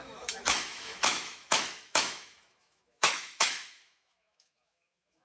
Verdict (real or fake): fake